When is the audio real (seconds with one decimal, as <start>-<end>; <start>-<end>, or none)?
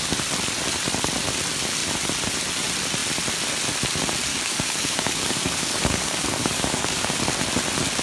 0.0-4.3; 7.2-8.0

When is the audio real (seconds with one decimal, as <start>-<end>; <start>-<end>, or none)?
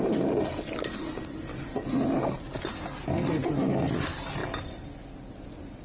0.0-5.8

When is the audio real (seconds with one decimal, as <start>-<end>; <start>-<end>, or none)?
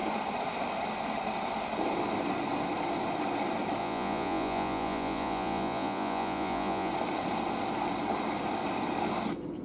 0.0-3.8; 6.9-9.6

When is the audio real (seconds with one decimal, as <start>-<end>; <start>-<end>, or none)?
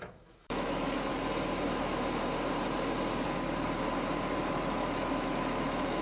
1.1-4.5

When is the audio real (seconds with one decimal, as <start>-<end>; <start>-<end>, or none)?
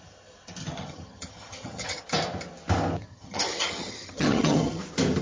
0.0-0.6; 2.0-3.1; 4.8-5.2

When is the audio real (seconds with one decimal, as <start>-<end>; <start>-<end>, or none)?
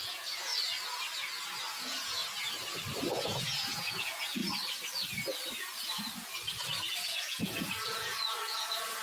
0.5-1.7; 2.2-3.1; 4.4-6.9